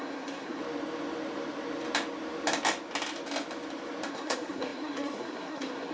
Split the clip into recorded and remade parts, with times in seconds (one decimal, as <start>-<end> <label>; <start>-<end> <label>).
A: 0.0-0.6 remade; 0.6-4.1 recorded; 4.1-5.9 remade